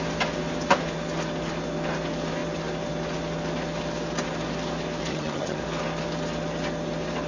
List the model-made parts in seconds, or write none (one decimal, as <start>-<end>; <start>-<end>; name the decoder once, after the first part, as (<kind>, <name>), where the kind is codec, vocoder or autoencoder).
5.1-5.6 (vocoder, HiFi-GAN)